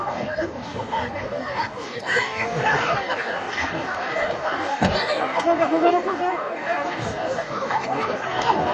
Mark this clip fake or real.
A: fake